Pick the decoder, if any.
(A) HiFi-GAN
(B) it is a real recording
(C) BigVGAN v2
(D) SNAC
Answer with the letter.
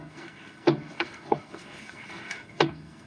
D